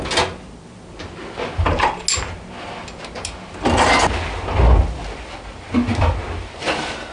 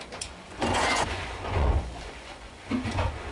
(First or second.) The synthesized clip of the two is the second